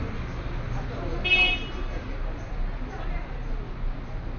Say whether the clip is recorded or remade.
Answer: recorded